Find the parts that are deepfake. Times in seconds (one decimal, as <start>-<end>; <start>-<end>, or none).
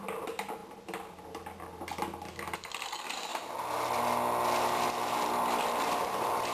none